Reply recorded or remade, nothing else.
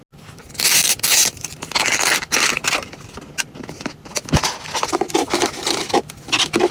recorded